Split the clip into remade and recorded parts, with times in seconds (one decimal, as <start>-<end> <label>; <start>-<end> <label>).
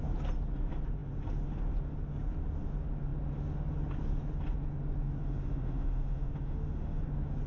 0.0-5.2 recorded; 5.2-7.0 remade; 7.0-7.5 recorded